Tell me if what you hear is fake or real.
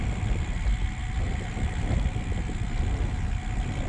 real